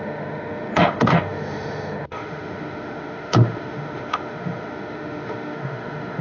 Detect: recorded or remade remade